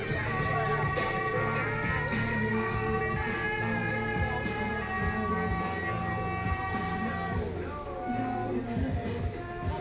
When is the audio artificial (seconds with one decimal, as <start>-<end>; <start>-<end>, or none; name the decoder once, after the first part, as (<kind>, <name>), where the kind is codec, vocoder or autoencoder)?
2.5-3.0 (codec, SNAC); 5.3-6.0